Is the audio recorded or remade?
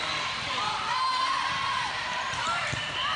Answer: remade